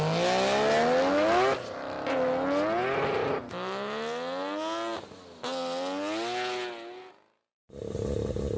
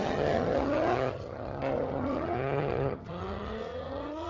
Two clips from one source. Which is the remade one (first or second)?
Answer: second